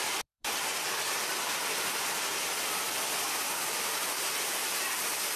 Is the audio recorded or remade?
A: remade